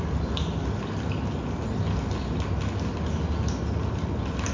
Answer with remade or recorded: recorded